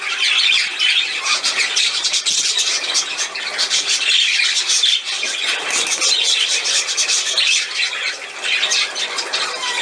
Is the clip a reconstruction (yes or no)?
no